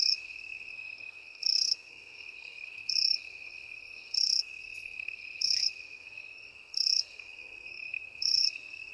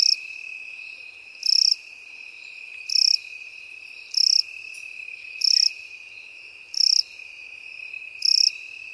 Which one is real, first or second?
second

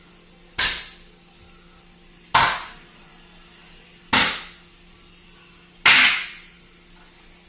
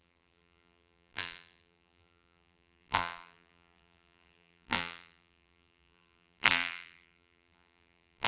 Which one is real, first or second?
first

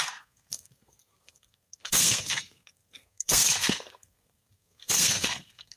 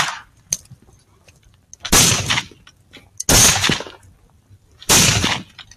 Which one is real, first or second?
second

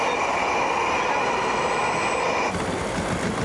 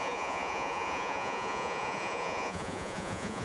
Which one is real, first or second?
first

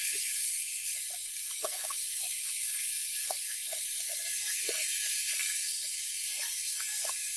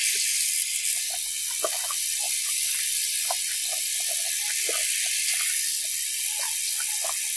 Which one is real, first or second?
second